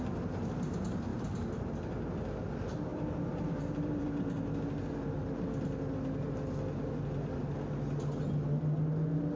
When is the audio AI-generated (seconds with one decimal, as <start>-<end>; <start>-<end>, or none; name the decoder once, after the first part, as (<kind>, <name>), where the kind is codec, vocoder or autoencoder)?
1.1-1.7 (vocoder, BigVGAN v2); 2.9-4.4